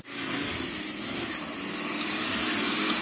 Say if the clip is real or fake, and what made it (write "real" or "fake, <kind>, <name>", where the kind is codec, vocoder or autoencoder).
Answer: real